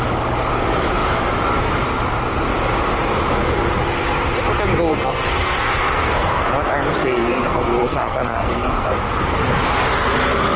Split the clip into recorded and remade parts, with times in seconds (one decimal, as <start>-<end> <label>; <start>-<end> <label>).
0.0-4.9 recorded; 4.9-6.5 remade; 6.5-7.0 recorded; 7.0-9.0 remade; 9.0-10.6 recorded